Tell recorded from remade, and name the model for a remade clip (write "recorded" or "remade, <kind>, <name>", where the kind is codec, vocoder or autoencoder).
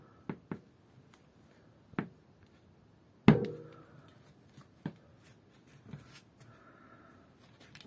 recorded